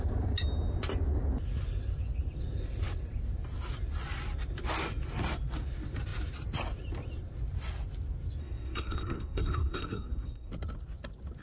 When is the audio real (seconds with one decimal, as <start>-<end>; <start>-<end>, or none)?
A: 0.0-8.4; 10.5-11.4